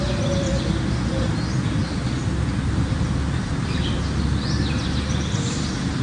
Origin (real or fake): real